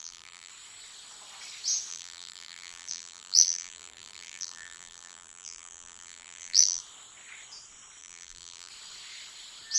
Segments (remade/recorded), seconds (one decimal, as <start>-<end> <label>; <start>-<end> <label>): 0.0-0.5 remade; 0.5-1.9 recorded; 1.9-6.8 remade; 6.8-8.0 recorded; 8.0-8.7 remade; 8.7-9.8 recorded